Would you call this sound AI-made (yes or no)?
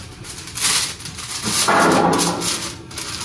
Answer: no